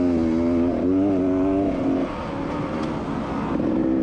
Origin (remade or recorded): recorded